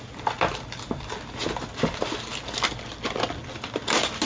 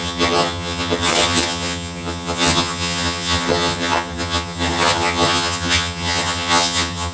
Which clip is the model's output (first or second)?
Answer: second